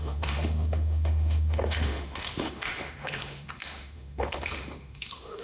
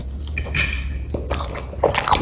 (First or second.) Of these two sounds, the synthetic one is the first